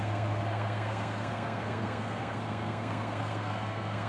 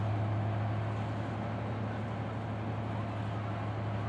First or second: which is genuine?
second